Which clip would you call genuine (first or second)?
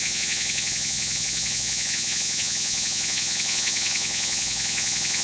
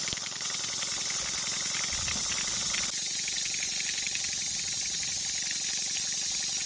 second